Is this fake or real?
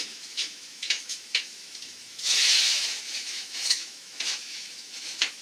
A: fake